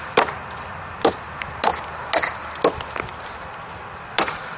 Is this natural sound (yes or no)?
yes